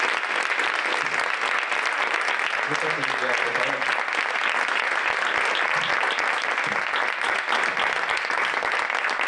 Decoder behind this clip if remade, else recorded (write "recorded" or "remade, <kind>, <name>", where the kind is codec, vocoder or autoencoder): recorded